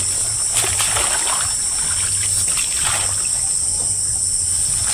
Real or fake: real